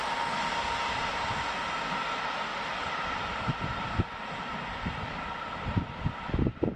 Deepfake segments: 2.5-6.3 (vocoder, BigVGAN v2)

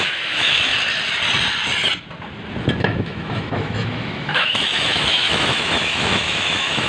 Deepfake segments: 0.0-0.7 (autoencoder, DAC-VAE); 2.8-6.9

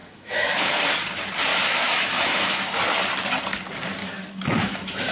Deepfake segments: 0.0-0.8 (autoencoder, DAC-VAE); 1.5-2.8; 4.0-5.1